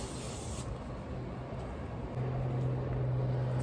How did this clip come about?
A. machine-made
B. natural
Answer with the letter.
B